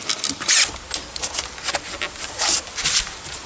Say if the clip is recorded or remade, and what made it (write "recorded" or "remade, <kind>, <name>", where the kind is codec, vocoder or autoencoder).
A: recorded